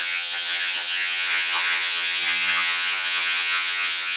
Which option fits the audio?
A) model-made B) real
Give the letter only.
A